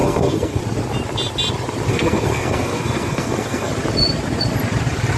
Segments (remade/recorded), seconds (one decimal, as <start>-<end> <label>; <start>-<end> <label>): 0.0-0.6 remade; 0.6-1.9 recorded; 1.9-3.7 remade; 3.7-5.2 recorded